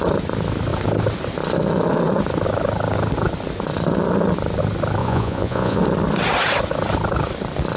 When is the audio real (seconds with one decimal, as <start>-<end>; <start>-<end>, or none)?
0.0-5.0; 5.8-7.8